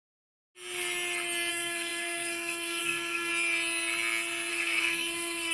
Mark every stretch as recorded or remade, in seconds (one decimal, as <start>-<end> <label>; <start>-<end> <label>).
0.0-1.5 recorded; 1.5-3.3 remade; 3.3-4.5 recorded; 4.5-5.5 remade